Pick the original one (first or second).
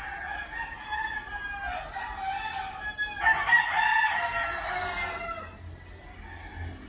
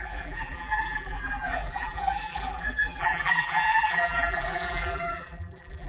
first